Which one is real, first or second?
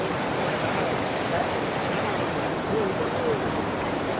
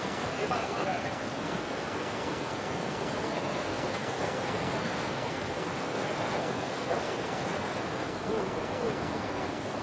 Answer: first